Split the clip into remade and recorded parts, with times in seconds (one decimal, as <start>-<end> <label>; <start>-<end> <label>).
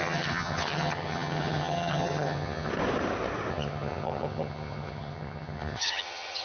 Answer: 0.0-2.7 remade; 2.7-3.5 recorded; 3.5-6.4 remade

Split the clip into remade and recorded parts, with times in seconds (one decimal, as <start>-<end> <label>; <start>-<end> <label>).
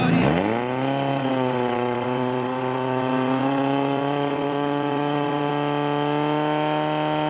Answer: 0.0-1.1 recorded; 1.1-5.5 remade; 5.5-7.3 recorded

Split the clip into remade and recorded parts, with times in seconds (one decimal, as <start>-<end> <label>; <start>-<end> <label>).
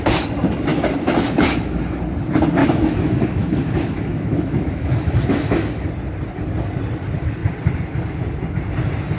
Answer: 0.0-0.7 recorded; 0.7-1.8 remade; 1.8-2.6 recorded; 2.6-5.9 remade; 5.9-9.2 recorded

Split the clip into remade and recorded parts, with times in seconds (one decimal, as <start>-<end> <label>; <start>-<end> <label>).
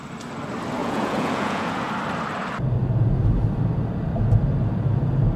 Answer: 0.0-0.8 recorded; 0.8-1.9 remade; 1.9-5.4 recorded